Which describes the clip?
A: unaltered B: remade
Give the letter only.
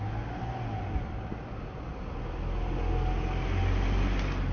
A